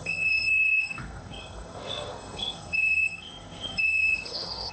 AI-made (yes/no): yes